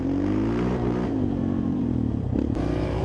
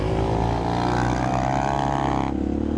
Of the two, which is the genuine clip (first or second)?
second